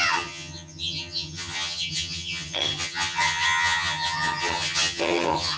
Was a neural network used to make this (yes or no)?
yes